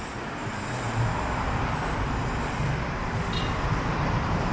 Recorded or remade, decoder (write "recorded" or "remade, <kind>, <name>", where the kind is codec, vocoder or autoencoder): recorded